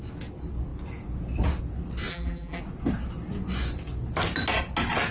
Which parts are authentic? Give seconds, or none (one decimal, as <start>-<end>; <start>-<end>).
0.0-2.1; 2.6-5.1